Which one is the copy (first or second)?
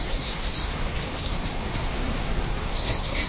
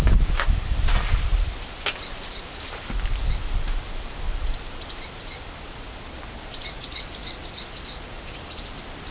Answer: first